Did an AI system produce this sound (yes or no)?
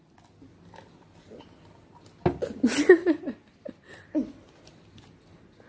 no